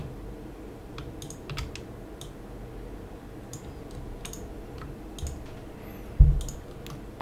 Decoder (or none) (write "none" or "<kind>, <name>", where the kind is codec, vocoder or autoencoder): none